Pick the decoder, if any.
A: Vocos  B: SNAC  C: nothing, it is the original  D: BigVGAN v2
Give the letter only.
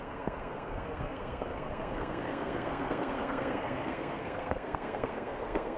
B